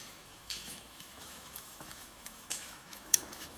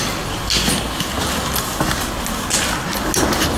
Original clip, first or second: second